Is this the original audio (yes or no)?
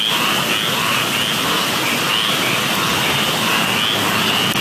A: yes